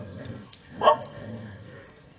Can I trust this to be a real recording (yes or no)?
no